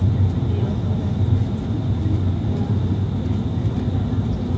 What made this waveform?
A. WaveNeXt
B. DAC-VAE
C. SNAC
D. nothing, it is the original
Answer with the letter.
D